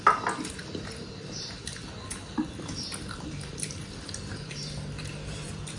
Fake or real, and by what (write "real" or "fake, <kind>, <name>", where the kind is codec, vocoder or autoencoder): real